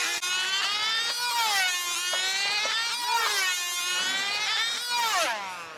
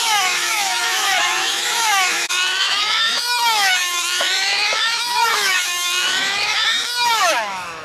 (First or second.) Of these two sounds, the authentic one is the first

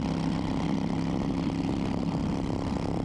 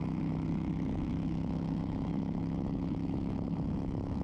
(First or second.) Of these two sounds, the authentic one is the first